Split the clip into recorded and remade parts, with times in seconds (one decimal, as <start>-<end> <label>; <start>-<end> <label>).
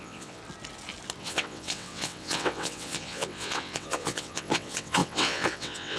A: 0.0-0.4 remade; 0.4-1.2 recorded; 1.2-6.0 remade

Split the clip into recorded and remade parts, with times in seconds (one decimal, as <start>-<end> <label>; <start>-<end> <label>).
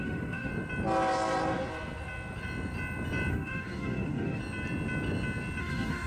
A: 0.0-0.5 remade; 0.5-3.3 recorded; 3.3-4.4 remade; 4.4-5.6 recorded; 5.6-6.1 remade